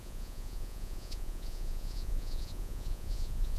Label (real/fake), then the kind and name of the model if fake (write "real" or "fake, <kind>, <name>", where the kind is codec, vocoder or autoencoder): fake, vocoder, Vocos